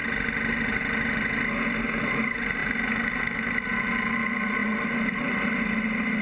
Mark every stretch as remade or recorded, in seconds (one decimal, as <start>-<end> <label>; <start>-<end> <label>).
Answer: 0.0-6.2 recorded